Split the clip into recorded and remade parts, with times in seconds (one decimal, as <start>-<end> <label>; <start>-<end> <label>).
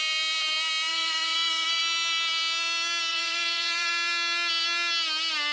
0.0-0.9 recorded; 0.9-1.8 remade; 1.8-3.1 recorded; 3.1-3.9 remade; 3.9-5.5 recorded